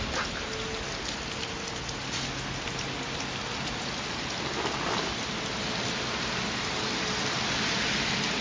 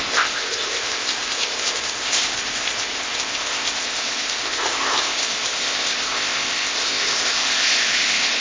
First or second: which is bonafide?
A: first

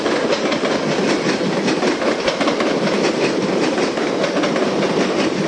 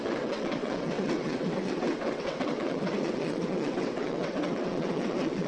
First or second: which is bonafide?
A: first